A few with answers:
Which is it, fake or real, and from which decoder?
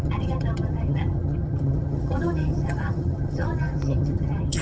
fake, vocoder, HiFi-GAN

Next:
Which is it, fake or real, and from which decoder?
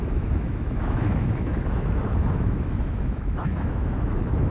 fake, autoencoder, DAC-VAE